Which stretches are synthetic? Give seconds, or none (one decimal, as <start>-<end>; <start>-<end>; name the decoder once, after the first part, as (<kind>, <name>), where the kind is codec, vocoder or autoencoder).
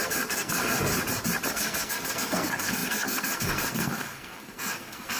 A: 0.0-0.9 (codec, SNAC); 1.5-5.2